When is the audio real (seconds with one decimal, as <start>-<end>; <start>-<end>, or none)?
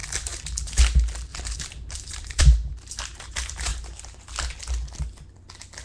0.7-1.3; 2.4-5.8